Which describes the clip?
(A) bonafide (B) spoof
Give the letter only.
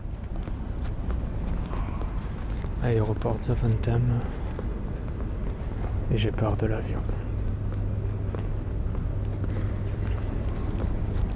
A